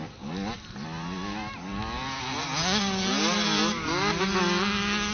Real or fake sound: real